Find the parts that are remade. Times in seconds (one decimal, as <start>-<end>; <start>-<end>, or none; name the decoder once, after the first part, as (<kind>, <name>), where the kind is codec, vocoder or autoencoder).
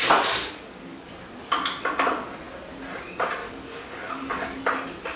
0.4-1.1 (codec, DAC); 3.4-4.6